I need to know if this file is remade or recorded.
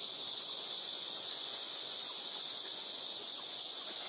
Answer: remade